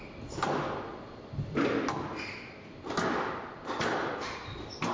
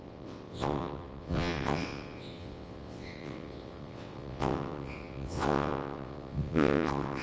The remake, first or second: second